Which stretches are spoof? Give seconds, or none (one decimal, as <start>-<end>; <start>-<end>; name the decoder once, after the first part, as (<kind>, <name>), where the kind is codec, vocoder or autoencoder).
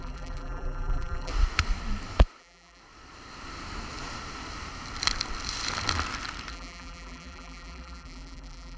0.0-1.3 (vocoder, BigVGAN v2); 2.4-2.8; 6.5-8.8